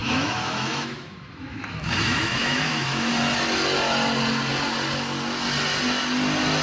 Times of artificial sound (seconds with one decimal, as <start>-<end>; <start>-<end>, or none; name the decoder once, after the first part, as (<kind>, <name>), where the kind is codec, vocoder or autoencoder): 0.0-3.1 (autoencoder, DAC-VAE)